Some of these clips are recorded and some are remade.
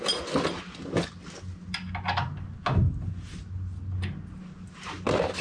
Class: recorded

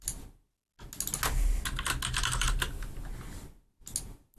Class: recorded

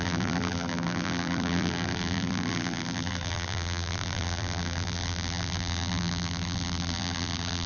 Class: remade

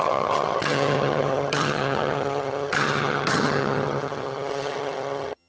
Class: remade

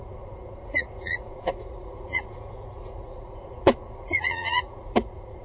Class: remade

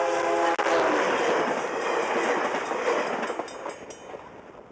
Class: recorded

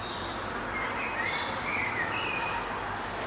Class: recorded